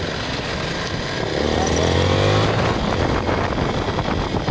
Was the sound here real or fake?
real